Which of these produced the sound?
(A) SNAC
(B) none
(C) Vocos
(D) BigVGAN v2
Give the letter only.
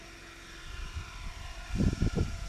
B